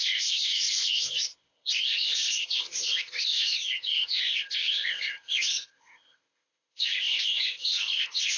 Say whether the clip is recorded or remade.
remade